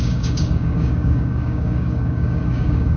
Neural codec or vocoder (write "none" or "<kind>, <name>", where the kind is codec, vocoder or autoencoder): codec, DAC